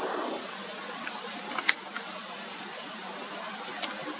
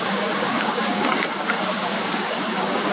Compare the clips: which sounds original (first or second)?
first